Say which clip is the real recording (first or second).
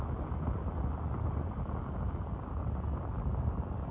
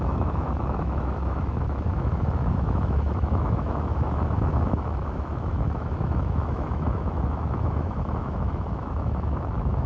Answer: first